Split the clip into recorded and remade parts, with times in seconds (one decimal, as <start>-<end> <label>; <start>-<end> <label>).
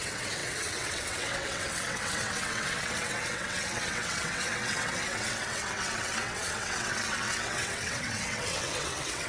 0.0-9.3 remade